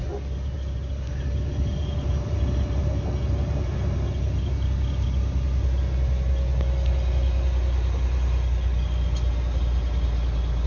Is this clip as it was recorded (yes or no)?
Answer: yes